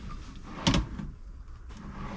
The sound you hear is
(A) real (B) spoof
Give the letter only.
A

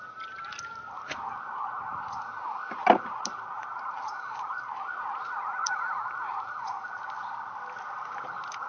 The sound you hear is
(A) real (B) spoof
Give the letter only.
A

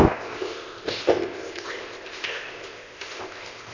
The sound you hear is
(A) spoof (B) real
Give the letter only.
A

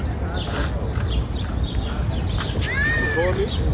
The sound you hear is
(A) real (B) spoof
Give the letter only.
A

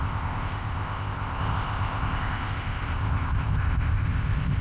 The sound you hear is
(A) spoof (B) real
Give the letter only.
A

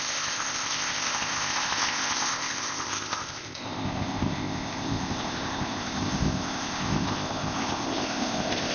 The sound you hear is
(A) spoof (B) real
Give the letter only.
A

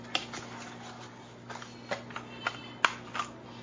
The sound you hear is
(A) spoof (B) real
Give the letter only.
B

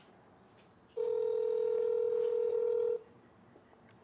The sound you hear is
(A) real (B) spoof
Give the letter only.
A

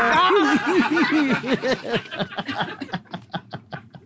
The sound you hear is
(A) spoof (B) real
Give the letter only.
B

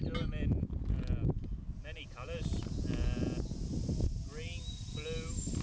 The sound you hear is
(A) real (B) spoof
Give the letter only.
A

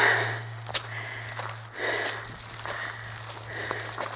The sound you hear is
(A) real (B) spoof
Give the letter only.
A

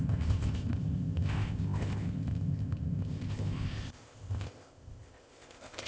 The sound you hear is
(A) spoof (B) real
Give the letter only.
A